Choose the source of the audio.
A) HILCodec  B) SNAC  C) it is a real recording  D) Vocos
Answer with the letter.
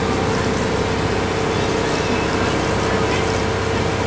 C